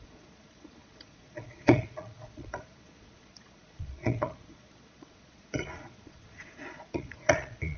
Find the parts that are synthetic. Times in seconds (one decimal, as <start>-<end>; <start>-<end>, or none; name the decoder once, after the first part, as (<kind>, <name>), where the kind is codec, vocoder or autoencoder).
0.0-7.8 (vocoder, Vocos)